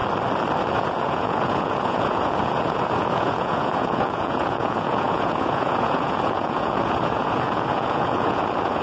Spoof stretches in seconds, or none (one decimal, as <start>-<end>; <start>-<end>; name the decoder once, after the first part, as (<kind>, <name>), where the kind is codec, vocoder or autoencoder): 0.7-8.8 (vocoder, Vocos)

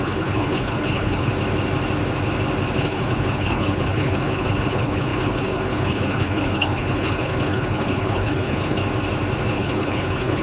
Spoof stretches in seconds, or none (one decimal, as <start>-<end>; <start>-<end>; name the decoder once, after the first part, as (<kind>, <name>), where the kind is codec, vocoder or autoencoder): 0.0-1.3 (codec, HILCodec); 2.8-8.8; 9.5-10.4

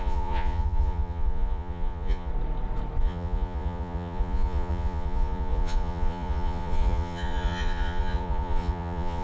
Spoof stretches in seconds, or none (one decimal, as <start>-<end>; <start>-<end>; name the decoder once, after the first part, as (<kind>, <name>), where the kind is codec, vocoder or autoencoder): 0.0-2.3 (vocoder, Vocos); 3.0-9.2

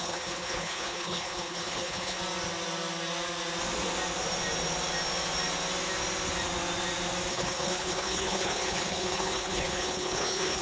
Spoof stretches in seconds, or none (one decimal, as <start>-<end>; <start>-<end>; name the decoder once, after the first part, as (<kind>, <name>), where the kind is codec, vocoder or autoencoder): 0.0-2.2 (codec, HILCodec); 7.3-10.6

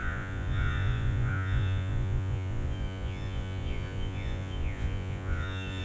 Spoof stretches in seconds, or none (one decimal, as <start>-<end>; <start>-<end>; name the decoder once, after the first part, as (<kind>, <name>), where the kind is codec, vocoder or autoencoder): 0.0-5.8 (vocoder, Vocos)

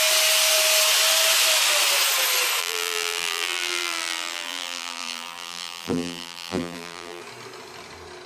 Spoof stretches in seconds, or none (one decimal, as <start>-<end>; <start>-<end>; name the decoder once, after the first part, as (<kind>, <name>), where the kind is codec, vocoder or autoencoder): 2.6-7.2 (vocoder, BigVGAN v2)